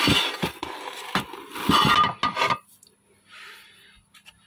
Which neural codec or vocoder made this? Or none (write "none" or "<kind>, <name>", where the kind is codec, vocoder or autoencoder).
none